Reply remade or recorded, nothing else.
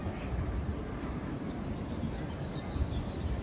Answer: remade